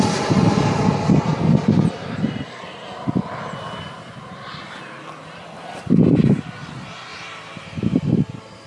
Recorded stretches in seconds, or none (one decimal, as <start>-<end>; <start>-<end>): 0.0-7.1; 8.1-8.7